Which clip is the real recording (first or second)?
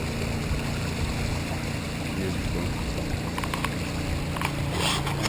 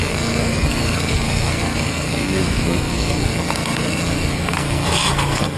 first